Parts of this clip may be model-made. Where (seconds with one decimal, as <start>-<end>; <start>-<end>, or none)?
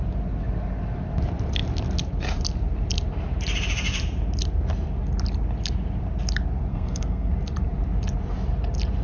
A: 6.7-7.3